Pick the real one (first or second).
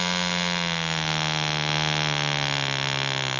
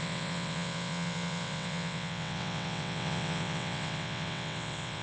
first